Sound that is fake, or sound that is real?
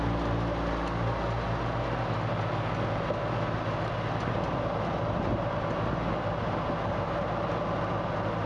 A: real